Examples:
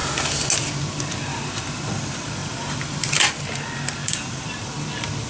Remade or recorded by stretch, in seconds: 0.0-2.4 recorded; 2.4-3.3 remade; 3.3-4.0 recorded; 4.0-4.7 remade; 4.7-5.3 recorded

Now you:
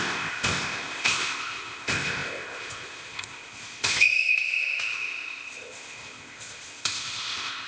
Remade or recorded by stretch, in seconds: 0.0-7.7 remade

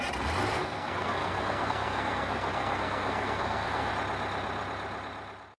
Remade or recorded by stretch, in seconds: 0.0-0.5 recorded; 0.5-3.9 remade; 3.9-5.6 recorded